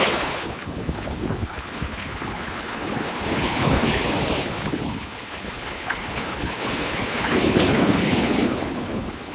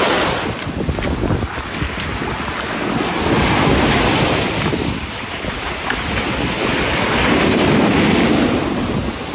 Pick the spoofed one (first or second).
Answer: first